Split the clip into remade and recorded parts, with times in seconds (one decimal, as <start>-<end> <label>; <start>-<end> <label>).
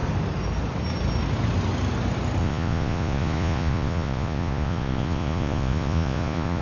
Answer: 0.0-2.4 recorded; 2.4-6.6 remade